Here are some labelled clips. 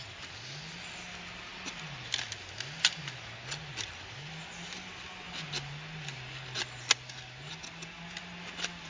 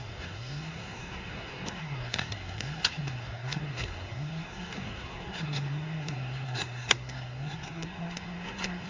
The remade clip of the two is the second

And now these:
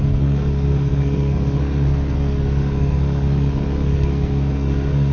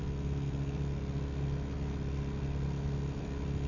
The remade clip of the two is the first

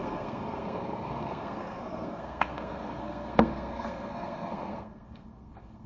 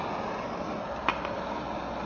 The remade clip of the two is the first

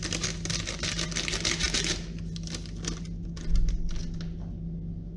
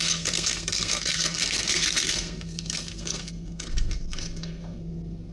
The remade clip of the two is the second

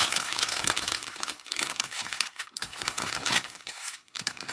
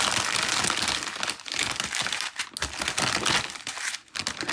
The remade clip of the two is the first